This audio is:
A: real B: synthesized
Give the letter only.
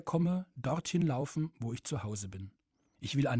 B